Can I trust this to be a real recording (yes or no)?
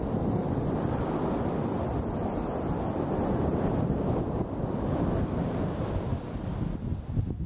yes